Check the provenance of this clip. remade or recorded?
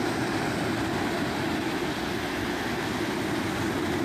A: recorded